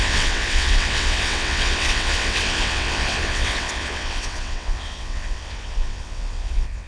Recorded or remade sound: remade